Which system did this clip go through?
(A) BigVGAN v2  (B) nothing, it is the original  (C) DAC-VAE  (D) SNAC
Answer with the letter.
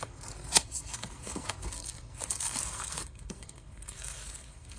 D